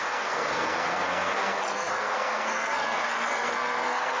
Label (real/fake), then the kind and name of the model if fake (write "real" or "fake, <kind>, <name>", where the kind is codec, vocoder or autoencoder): fake, codec, SNAC